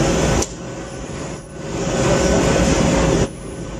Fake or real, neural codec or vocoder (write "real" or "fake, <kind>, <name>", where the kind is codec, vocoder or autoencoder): real